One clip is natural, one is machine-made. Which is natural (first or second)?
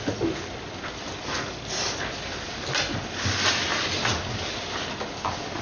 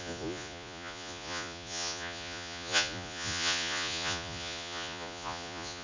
first